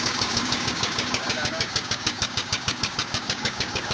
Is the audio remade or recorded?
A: remade